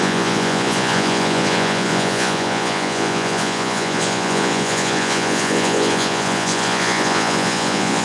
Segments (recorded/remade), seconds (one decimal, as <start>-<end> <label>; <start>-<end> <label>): 0.0-8.0 remade